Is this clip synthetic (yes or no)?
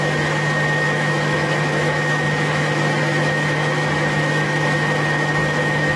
yes